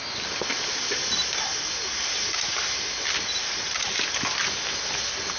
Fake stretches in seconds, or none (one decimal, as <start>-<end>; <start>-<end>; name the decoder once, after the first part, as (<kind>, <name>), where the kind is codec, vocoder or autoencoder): none